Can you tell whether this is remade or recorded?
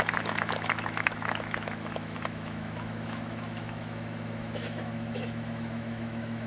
remade